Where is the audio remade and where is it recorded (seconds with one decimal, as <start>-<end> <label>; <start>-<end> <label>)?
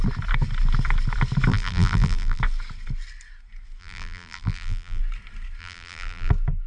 0.0-1.5 recorded; 1.5-2.4 remade; 2.4-3.8 recorded; 3.8-5.0 remade; 5.0-5.6 recorded; 5.6-6.3 remade; 6.3-6.7 recorded